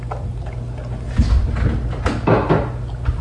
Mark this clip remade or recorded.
recorded